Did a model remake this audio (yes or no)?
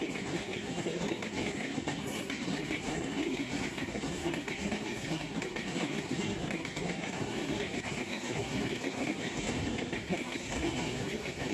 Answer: yes